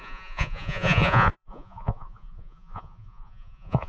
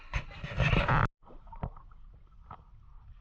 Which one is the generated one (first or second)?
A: first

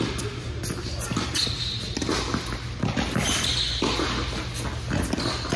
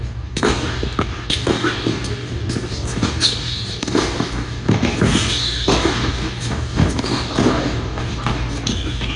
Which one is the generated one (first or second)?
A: second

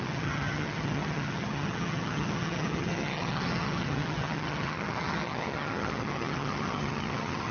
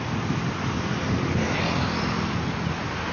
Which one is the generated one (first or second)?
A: first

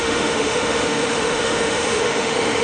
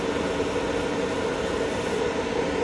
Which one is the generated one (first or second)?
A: first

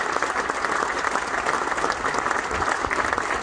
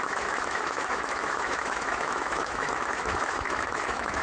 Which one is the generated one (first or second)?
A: second